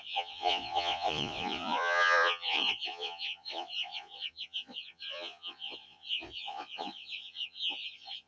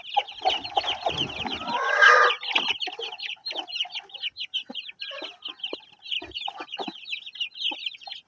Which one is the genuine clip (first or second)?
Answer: second